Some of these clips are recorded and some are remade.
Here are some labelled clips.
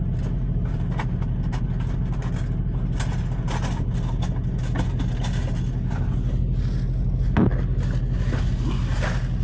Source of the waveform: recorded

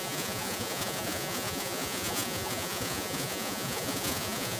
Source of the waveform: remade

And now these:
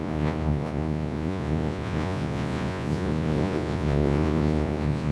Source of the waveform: remade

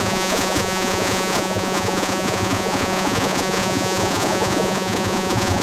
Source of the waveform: remade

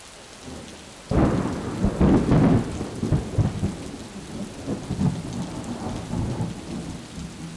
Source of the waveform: recorded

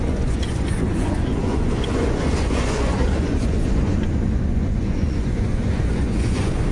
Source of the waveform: remade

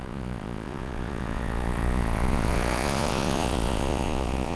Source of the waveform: remade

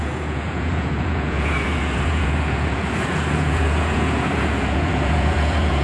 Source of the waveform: remade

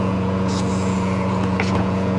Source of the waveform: remade